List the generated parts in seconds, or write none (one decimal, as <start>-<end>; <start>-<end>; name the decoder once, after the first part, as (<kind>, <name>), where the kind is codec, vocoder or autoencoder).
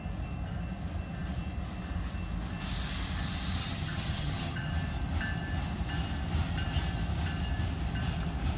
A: 3.6-4.7 (vocoder, HiFi-GAN)